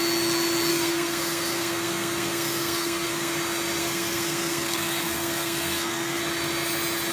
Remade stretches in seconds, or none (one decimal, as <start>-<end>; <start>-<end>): 0.7-3.3; 3.8-6.2

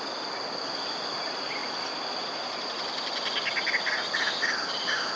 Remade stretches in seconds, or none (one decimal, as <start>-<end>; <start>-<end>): none

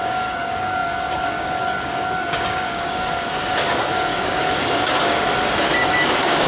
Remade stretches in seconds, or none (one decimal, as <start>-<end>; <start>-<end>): 0.0-6.5

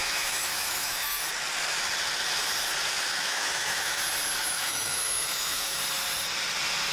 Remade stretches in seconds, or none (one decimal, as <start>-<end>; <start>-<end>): 0.0-1.2; 3.1-4.0; 4.4-5.8

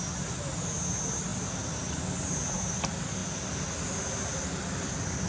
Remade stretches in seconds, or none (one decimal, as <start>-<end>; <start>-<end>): none

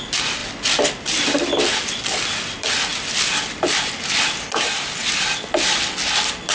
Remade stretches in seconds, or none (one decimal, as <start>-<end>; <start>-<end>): none

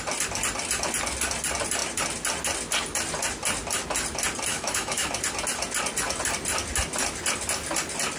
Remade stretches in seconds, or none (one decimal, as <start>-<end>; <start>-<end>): 4.5-5.1

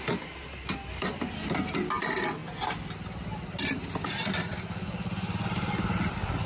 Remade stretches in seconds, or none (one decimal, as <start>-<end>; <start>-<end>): none